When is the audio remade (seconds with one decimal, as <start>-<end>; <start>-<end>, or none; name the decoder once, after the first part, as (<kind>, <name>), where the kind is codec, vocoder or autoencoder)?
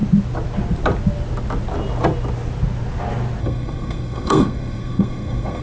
3.4-5.6 (codec, SNAC)